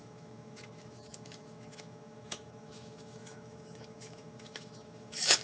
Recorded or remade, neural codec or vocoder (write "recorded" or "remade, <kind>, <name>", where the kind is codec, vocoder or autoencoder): remade, autoencoder, DAC-VAE